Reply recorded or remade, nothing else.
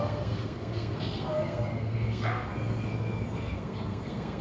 remade